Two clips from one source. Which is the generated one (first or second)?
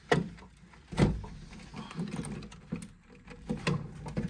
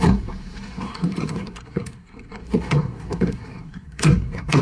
second